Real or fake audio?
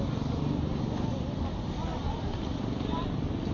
real